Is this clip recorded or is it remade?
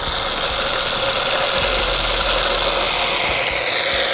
recorded